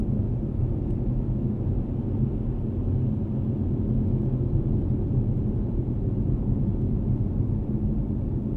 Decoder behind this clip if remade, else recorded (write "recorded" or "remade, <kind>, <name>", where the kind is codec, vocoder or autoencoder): recorded